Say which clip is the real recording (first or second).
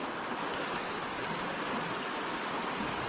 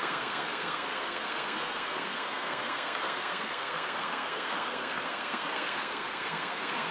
first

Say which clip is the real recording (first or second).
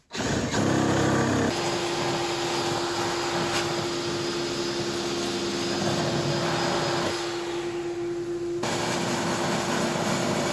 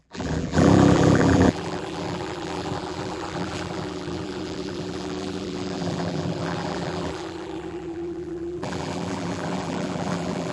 first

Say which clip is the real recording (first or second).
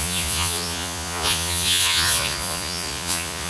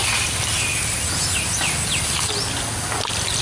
second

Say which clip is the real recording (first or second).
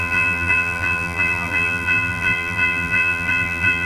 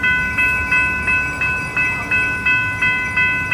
second